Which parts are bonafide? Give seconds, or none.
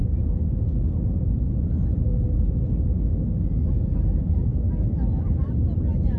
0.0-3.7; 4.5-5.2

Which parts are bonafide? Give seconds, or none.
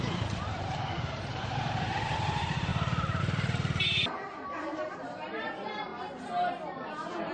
2.7-3.2; 5.9-6.5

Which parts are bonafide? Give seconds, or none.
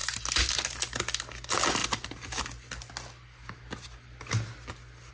0.0-5.1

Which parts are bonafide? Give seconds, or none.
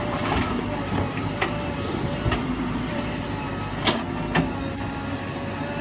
3.5-5.8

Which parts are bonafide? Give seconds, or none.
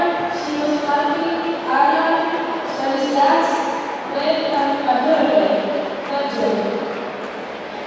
0.0-0.7; 1.6-5.1; 6.1-7.9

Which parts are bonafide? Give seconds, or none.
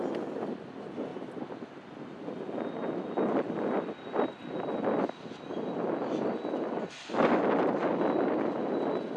0.0-1.1; 2.5-9.2